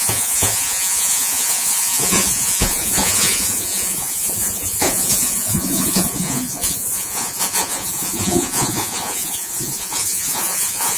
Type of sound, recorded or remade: remade